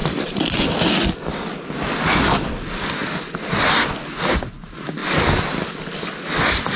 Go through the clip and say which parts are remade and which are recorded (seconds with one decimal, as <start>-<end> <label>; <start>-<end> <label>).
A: 0.0-0.5 remade; 0.5-6.8 recorded